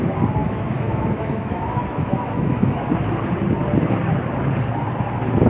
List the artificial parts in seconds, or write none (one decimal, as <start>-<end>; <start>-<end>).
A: 0.4-2.9